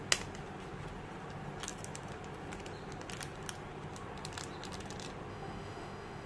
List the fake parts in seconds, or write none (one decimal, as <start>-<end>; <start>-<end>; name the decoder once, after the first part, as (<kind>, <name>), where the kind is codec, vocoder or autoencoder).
5.3-6.3 (autoencoder, DAC-VAE)